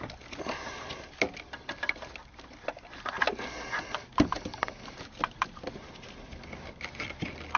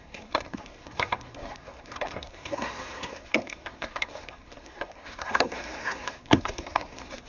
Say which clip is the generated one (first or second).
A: second